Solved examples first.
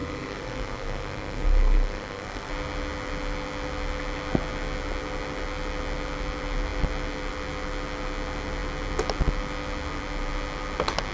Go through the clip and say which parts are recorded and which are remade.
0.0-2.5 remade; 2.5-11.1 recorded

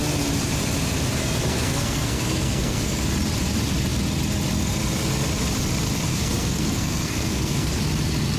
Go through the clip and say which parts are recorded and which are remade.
0.0-1.2 recorded; 1.2-3.0 remade; 3.0-6.1 recorded; 6.1-7.8 remade; 7.8-8.4 recorded